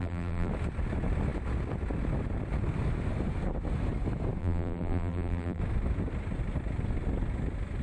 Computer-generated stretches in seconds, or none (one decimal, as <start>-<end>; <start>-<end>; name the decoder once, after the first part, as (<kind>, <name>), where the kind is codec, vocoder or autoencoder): 0.0-0.5 (vocoder, BigVGAN v2); 4.4-5.6